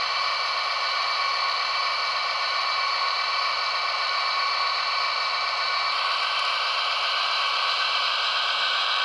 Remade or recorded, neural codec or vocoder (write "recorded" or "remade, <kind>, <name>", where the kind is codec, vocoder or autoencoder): remade, vocoder, BigVGAN v2